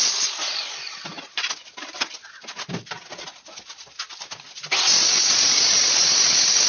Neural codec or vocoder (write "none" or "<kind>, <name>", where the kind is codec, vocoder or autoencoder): none